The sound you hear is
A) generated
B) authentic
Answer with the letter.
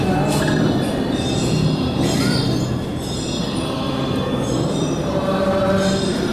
B